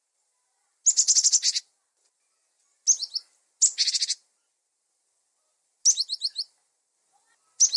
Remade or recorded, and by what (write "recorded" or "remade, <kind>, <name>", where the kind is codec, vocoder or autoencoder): recorded